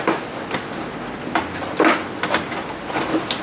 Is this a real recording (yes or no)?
yes